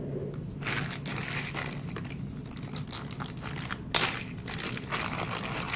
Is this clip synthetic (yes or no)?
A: no